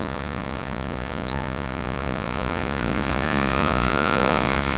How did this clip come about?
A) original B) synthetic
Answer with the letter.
B